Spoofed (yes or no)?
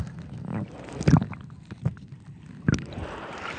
no